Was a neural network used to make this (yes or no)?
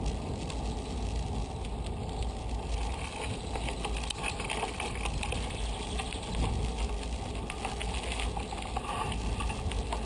no